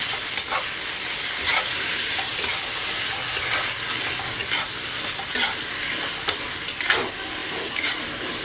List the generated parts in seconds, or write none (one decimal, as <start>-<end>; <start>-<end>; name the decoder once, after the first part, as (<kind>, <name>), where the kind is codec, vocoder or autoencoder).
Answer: 1.5-2.3 (vocoder, BigVGAN v2); 7.4-8.4